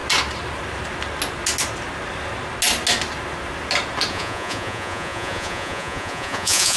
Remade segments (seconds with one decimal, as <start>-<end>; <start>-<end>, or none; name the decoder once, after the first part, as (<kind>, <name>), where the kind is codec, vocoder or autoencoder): 4.1-6.8 (vocoder, Vocos)